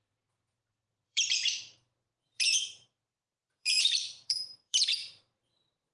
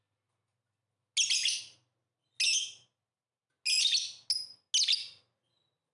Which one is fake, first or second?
first